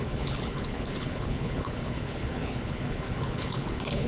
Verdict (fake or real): fake